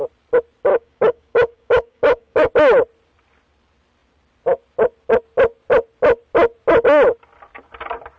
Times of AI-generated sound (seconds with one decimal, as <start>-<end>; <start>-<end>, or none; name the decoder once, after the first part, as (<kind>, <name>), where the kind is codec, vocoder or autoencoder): 0.7-2.5 (codec, DAC)